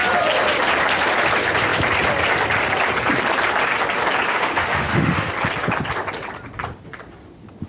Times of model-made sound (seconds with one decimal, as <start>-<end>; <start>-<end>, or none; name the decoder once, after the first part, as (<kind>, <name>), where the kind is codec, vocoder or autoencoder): 4.3-5.3 (autoencoder, DAC-VAE)